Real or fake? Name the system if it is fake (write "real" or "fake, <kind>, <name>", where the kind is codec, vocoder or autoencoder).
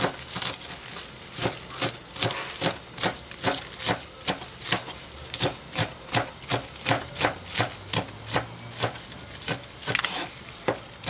real